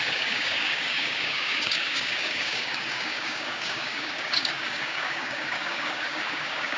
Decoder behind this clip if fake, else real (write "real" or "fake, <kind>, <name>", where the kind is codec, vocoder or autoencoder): fake, codec, DAC